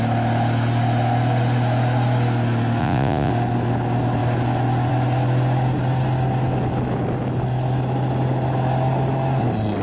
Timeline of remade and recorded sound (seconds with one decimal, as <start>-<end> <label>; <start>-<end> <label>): 0.0-2.8 recorded; 2.8-3.3 remade; 3.3-9.8 recorded